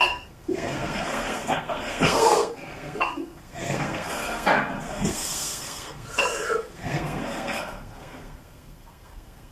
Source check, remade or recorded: remade